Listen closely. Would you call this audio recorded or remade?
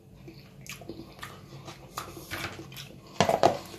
recorded